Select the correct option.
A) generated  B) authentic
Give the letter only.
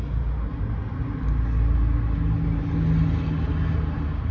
B